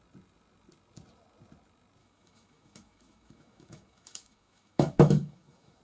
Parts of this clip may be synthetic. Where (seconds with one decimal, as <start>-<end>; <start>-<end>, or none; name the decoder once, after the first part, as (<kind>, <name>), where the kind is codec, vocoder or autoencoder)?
2.0-5.8 (autoencoder, DAC-VAE)